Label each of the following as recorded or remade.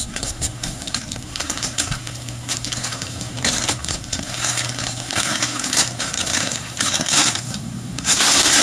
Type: remade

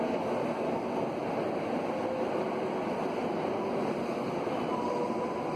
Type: recorded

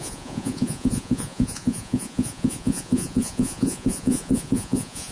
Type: remade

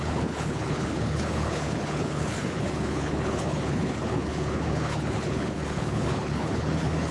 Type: remade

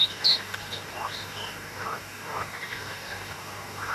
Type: remade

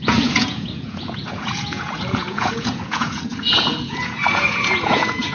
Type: remade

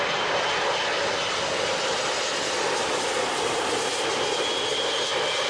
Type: recorded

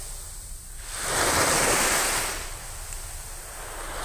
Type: recorded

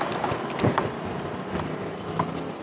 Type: recorded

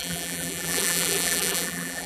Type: remade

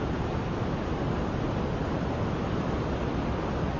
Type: recorded